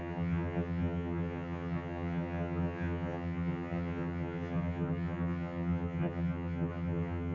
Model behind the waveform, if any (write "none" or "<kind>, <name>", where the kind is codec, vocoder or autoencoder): vocoder, HiFi-GAN